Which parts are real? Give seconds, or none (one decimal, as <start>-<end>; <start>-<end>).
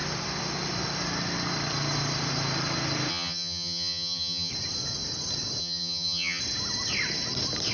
0.0-3.1; 4.5-5.6; 6.4-7.7